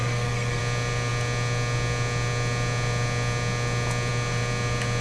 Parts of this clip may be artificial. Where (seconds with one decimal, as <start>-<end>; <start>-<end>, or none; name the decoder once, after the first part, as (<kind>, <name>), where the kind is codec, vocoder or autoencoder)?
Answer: 0.0-0.6 (codec, SNAC)